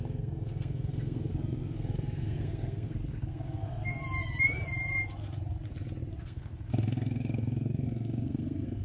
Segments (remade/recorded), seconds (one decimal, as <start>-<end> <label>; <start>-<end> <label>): 0.0-4.0 remade; 4.0-6.2 recorded; 6.2-8.8 remade